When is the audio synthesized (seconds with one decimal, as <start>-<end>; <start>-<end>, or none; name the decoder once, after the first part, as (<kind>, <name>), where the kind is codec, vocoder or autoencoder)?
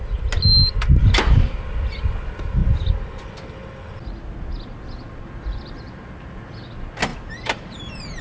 7.1-8.2 (vocoder, BigVGAN v2)